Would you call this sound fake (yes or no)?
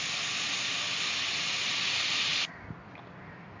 no